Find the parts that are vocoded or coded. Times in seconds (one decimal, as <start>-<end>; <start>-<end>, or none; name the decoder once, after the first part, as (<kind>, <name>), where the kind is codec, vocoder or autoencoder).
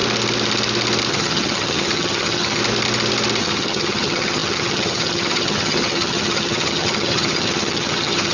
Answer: 1.1-2.6 (vocoder, HiFi-GAN); 3.4-8.3